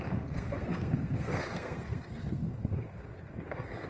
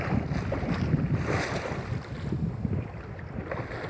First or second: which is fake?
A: first